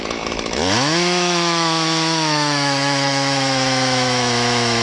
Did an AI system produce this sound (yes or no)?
yes